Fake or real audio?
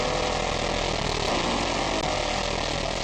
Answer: real